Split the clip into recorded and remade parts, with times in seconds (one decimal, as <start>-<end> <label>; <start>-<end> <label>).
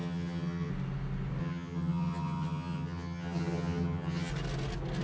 0.0-0.7 remade; 0.7-1.4 recorded; 1.4-4.3 remade; 4.3-5.0 recorded